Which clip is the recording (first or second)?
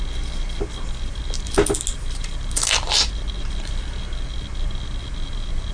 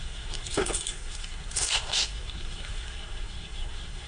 first